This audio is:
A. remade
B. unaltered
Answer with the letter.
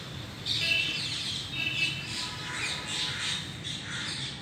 B